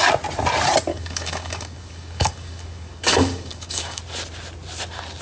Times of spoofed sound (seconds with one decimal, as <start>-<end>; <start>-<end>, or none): 0.9-4.0